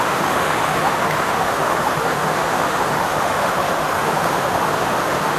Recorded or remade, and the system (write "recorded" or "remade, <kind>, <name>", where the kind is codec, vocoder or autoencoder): remade, autoencoder, DAC-VAE